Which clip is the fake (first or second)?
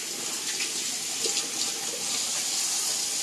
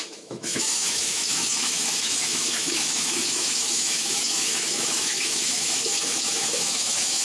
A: second